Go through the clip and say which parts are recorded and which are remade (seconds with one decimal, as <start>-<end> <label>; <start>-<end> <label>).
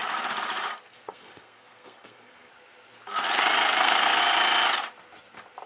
0.0-0.7 recorded; 0.7-2.5 remade; 2.5-3.8 recorded; 3.8-4.2 remade; 4.2-5.7 recorded